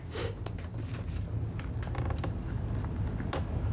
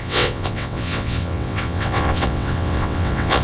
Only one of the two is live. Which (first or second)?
first